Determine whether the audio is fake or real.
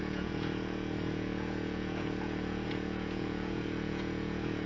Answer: fake